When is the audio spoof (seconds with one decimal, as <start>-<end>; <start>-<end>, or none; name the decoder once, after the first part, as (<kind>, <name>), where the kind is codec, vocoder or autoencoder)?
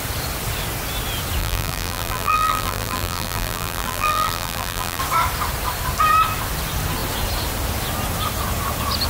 1.4-5.0 (vocoder, BigVGAN v2)